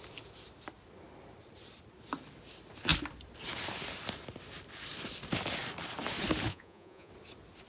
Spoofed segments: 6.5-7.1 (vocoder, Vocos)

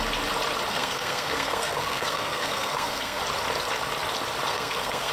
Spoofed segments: 0.7-3.2 (codec, SNAC); 4.5-5.1

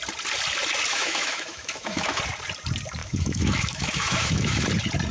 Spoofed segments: 0.9-2.2 (autoencoder, DAC-VAE); 3.0-4.6

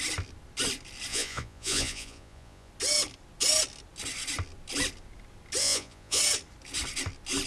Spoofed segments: 1.1-2.7 (vocoder, Vocos); 5.6-6.2

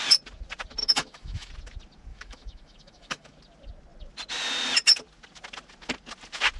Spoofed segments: 0.8-1.5 (autoencoder, DAC-VAE); 2.1-3.4